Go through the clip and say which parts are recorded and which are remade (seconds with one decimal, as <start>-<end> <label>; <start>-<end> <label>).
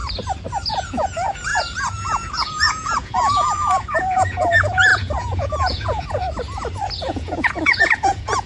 0.0-0.7 recorded; 0.7-6.2 remade; 6.2-7.0 recorded; 7.0-8.5 remade